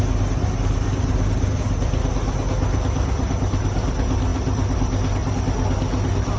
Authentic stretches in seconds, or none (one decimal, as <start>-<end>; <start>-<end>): 0.0-6.4